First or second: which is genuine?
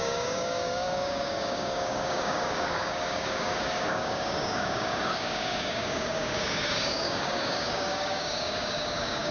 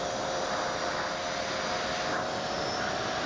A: second